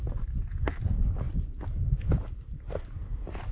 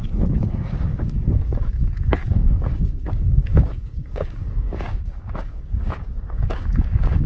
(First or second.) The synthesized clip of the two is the second